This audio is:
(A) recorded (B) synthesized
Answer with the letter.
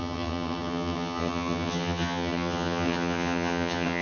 B